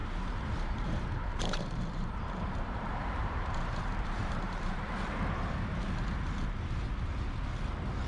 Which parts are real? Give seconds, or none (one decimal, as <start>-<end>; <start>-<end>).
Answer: 4.9-8.1